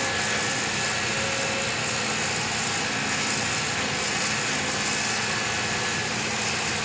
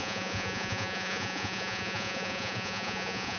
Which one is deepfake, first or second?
second